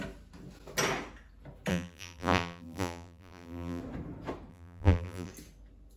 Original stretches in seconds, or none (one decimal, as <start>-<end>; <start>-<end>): 0.0-1.7; 3.8-4.5; 5.3-6.0